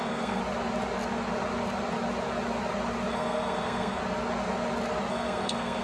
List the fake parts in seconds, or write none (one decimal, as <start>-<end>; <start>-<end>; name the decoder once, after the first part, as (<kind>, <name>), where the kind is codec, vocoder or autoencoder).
0.0-0.4 (codec, SNAC); 3.1-4.0; 5.1-5.8